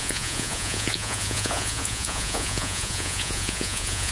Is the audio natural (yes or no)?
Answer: no